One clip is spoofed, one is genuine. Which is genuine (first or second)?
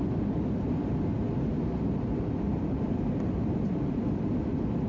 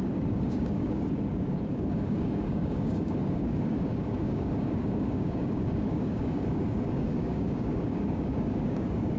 first